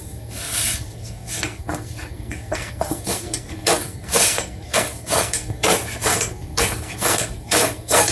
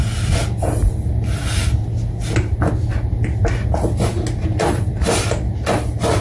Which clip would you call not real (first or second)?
first